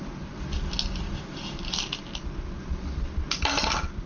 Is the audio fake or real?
real